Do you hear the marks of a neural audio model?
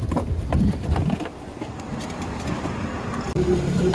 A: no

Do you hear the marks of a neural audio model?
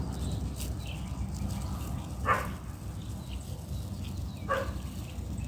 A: no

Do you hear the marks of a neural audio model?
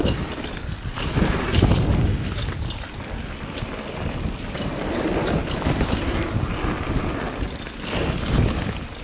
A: no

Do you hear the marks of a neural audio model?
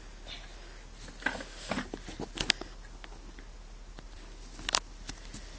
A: no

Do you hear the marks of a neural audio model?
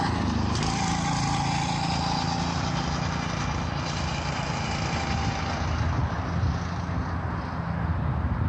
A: no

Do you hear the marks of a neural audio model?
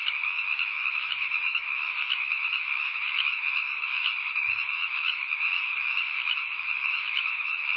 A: yes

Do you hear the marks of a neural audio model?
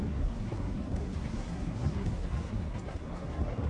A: yes